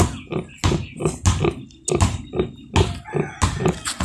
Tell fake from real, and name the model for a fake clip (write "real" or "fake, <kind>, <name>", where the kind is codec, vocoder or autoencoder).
real